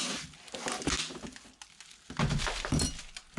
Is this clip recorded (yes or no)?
yes